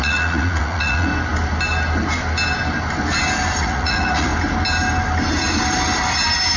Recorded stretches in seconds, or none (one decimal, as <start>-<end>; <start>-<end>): 1.1-3.6; 4.3-6.6